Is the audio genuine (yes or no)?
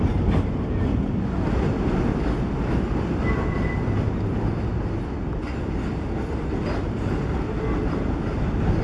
yes